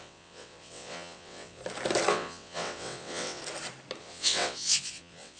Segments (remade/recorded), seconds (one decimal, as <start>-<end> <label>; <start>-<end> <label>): 0.0-1.6 remade; 1.6-2.1 recorded; 2.1-3.4 remade; 3.4-4.0 recorded; 4.0-5.4 remade